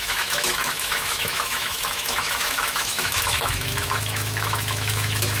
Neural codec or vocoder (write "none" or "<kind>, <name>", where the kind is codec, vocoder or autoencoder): autoencoder, DAC-VAE